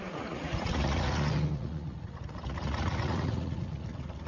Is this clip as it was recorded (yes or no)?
no